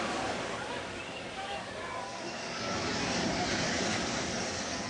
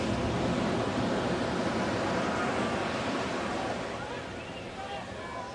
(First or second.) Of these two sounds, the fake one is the first